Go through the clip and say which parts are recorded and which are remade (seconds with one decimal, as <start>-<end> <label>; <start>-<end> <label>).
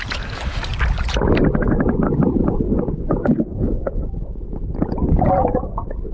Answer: 0.0-6.1 recorded